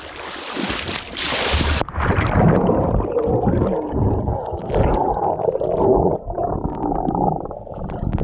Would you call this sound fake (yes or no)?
no